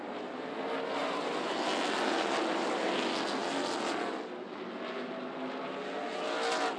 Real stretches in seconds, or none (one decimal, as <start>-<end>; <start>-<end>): 0.0-6.8